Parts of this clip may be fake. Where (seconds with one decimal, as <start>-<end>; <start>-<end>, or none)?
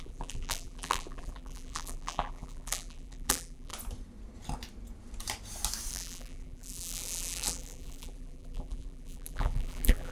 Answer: 0.0-3.7; 5.9-10.1